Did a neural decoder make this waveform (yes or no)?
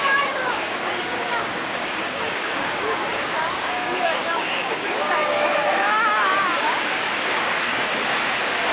yes